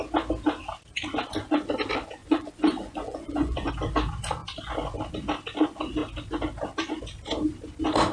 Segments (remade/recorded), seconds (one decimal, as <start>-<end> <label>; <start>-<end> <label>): 0.0-2.2 recorded; 2.2-3.7 remade; 3.7-8.1 recorded